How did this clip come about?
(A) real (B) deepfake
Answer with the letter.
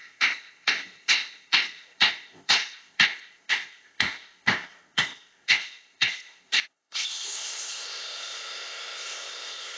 B